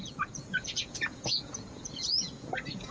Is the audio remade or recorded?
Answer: remade